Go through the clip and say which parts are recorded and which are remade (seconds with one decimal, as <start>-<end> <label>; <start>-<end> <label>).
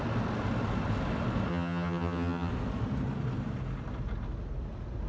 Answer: 0.0-1.5 recorded; 1.5-2.5 remade; 2.5-5.1 recorded